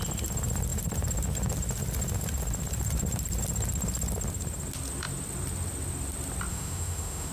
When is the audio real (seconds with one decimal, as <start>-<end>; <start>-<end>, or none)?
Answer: 0.0-6.5